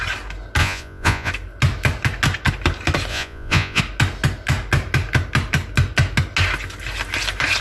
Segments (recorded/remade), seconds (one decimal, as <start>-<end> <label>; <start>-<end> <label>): 0.0-0.6 recorded; 0.6-1.3 remade; 1.3-3.1 recorded; 3.1-3.8 remade; 3.8-7.6 recorded